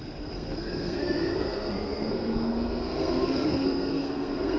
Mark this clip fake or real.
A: fake